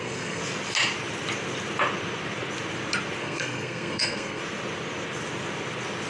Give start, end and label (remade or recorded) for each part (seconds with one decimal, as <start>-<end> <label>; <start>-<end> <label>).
0.0-0.4 remade; 0.4-3.2 recorded; 3.2-4.4 remade; 4.4-6.1 recorded